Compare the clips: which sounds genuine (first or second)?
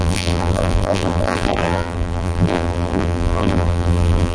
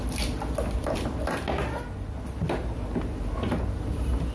second